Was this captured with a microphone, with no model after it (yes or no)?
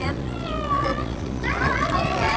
no